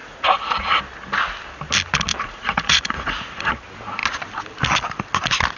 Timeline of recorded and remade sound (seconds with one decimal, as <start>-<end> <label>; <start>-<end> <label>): 0.0-0.8 remade; 0.8-2.1 recorded; 2.1-3.5 remade; 3.5-5.6 recorded

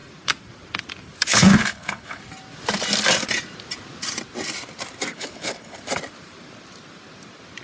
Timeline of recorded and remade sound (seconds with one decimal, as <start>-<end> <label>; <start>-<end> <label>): 0.0-1.3 recorded; 1.3-2.2 remade; 2.2-5.1 recorded; 5.1-5.8 remade; 5.8-7.6 recorded

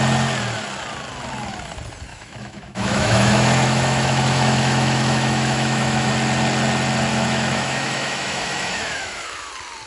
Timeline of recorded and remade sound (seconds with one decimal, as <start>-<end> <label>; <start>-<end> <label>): 0.0-2.1 recorded; 2.1-6.1 remade; 6.1-7.1 recorded; 7.1-9.5 remade; 9.5-9.9 recorded

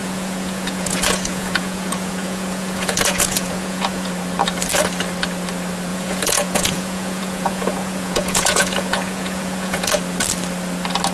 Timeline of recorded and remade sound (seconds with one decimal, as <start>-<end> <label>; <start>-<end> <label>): 0.0-4.1 remade; 4.1-5.9 recorded; 5.9-9.9 remade; 9.9-11.1 recorded

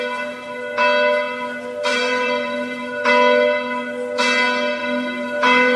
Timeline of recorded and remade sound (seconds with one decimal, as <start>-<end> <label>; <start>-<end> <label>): 0.0-1.9 recorded; 1.9-3.1 remade; 3.1-4.8 recorded; 4.8-5.8 remade

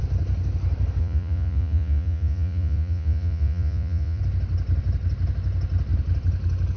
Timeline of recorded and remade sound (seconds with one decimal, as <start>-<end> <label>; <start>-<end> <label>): 0.0-1.0 recorded; 1.0-4.2 remade; 4.2-6.8 recorded

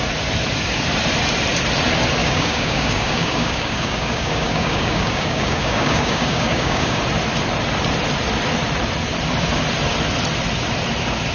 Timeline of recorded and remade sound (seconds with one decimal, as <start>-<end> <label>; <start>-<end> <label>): 0.0-2.2 recorded; 2.2-7.0 remade; 7.0-11.3 recorded